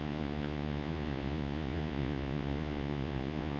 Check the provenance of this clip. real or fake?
fake